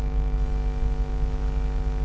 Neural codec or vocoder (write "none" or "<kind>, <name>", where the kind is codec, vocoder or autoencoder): none